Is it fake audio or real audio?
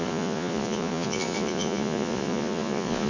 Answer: fake